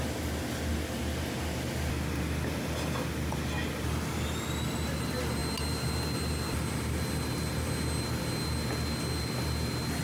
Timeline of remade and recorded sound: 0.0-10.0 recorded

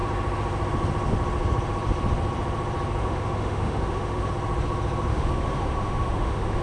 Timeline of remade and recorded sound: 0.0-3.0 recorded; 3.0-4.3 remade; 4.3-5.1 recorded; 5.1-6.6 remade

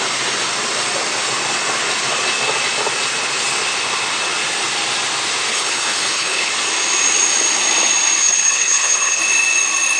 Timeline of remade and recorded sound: 0.0-5.5 recorded; 5.5-6.5 remade; 6.5-8.2 recorded; 8.2-9.2 remade; 9.2-10.0 recorded

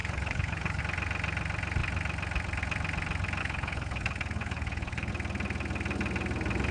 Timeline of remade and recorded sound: 0.0-0.8 remade; 0.8-3.4 recorded; 3.4-5.1 remade; 5.1-6.7 recorded

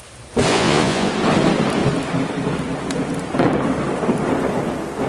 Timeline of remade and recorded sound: 0.0-0.5 recorded; 0.5-1.1 remade; 1.1-5.1 recorded

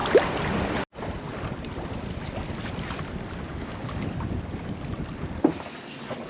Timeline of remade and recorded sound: 0.0-6.3 recorded